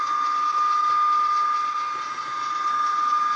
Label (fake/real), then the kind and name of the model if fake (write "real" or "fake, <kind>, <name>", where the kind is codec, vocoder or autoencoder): real